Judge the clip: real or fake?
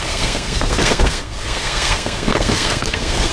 fake